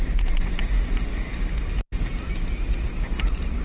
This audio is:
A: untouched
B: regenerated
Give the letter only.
A